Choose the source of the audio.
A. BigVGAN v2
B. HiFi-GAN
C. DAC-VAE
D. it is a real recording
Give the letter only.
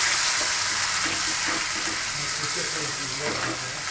D